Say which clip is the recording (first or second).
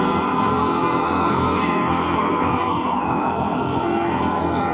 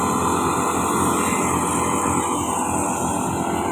second